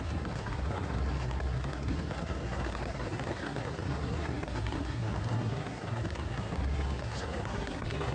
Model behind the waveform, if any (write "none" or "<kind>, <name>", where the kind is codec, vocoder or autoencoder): codec, SNAC